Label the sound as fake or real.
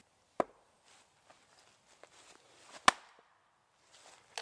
real